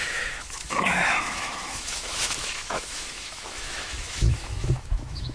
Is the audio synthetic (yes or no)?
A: yes